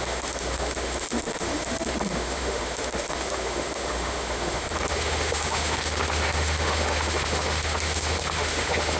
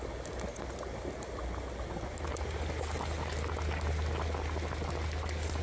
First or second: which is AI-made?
first